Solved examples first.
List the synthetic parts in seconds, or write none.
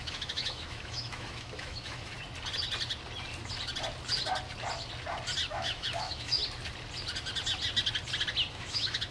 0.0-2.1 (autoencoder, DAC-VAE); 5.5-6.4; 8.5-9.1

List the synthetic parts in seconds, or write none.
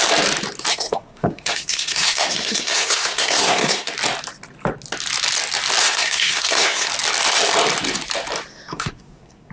0.7-3.9 (codec, SNAC); 5.8-6.9; 8.5-9.5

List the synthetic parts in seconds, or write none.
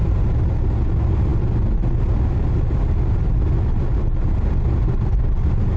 none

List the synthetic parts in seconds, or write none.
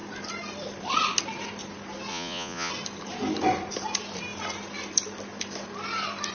2.1-2.7 (vocoder, Vocos)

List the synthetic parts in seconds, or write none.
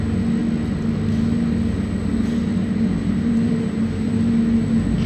2.6-4.2 (vocoder, BigVGAN v2)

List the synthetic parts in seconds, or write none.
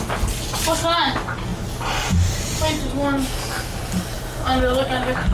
none